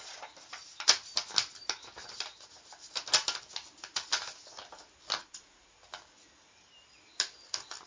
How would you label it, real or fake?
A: real